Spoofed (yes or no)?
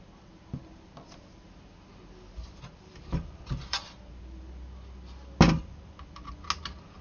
no